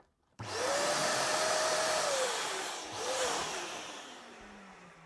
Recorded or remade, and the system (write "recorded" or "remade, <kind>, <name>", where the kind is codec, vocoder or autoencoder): remade, vocoder, BigVGAN v2